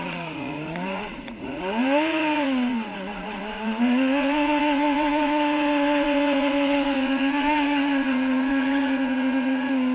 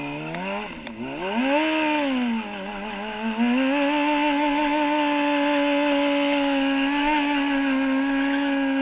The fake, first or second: first